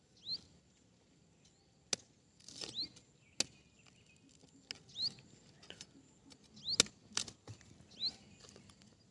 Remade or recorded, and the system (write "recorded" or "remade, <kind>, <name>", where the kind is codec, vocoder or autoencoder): recorded